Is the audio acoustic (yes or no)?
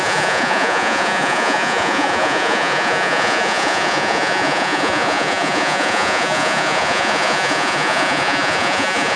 no